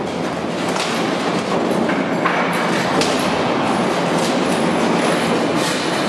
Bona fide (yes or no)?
yes